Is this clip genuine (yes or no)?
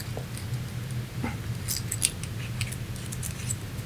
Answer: yes